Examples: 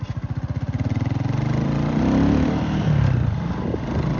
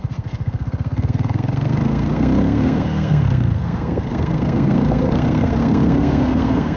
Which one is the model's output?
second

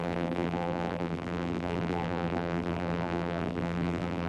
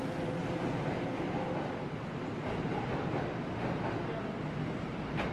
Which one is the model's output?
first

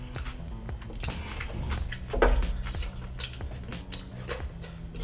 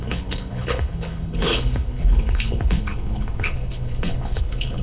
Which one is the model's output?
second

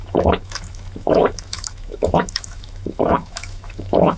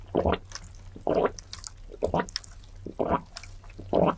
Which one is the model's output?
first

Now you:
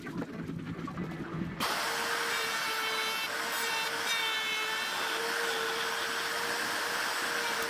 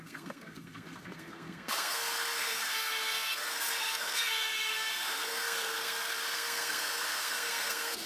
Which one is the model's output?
second